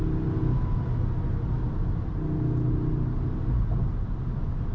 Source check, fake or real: real